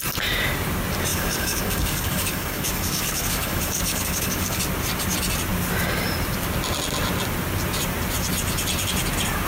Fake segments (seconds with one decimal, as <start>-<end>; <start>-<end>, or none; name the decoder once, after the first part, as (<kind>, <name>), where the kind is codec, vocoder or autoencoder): 1.1-4.6 (codec, DAC)